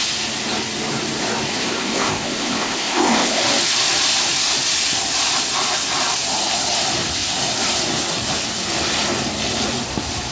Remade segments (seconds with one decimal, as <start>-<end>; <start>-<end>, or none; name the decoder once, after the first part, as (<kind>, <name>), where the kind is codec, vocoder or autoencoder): 1.5-3.4 (codec, ZipCodec)